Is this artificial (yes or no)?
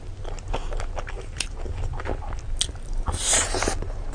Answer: no